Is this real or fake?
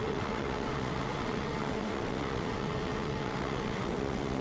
fake